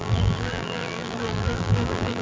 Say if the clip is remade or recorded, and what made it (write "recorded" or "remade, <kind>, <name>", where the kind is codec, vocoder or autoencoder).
remade, vocoder, BigVGAN v2